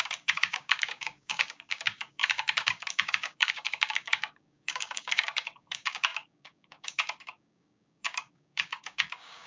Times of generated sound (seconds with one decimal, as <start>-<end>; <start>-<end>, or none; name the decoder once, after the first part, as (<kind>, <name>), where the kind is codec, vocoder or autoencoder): 0.0-9.5 (codec, DAC)